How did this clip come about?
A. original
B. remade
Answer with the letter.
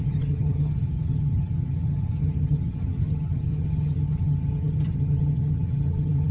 B